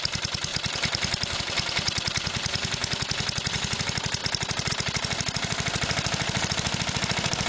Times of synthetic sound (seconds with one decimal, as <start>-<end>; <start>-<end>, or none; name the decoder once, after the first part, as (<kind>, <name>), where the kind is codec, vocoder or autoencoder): 0.5-1.4 (vocoder, BigVGAN v2); 4.2-4.7